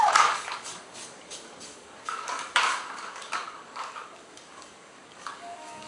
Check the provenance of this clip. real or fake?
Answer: fake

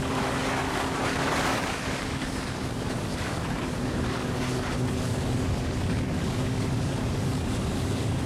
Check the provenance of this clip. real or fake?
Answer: fake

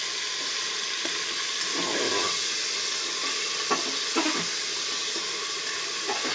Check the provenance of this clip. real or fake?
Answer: real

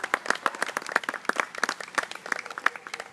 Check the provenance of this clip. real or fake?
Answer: real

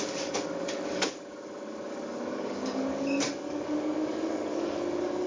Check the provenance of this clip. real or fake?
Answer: fake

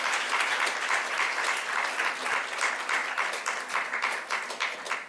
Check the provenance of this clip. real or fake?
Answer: real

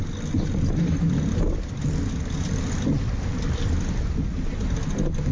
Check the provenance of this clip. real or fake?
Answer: real